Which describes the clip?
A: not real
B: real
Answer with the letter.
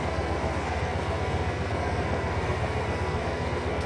A